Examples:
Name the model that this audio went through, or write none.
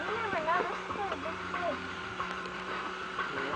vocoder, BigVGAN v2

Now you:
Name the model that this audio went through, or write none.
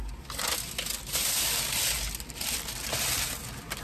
none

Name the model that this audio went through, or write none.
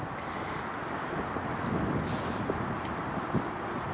none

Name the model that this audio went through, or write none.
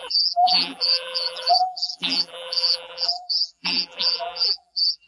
vocoder, BigVGAN v2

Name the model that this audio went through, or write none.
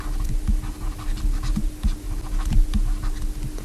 none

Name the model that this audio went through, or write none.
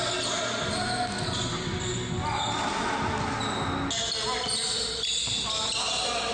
none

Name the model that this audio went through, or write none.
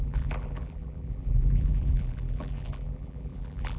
vocoder, BigVGAN v2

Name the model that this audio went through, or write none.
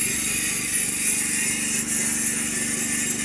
none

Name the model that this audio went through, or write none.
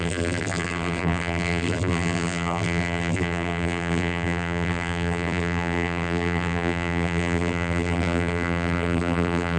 vocoder, BigVGAN v2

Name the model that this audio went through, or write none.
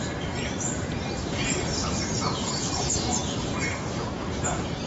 vocoder, BigVGAN v2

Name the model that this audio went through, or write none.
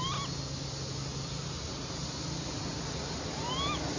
none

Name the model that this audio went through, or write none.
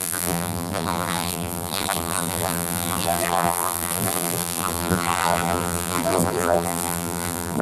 vocoder, BigVGAN v2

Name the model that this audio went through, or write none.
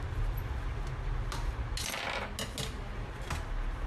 none